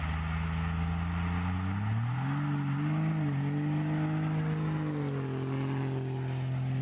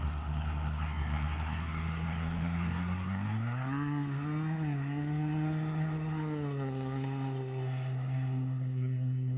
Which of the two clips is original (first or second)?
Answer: first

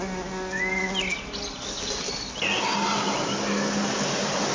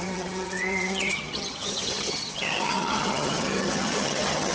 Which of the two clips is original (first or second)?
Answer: first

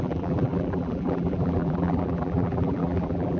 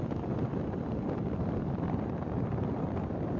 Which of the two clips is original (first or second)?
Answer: second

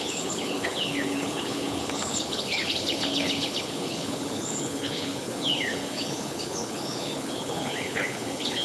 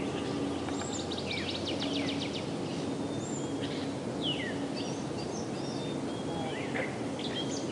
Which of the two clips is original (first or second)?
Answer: second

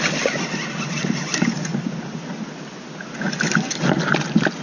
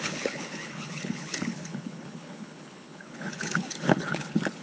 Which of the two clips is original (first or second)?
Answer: first